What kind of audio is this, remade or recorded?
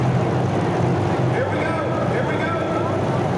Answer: recorded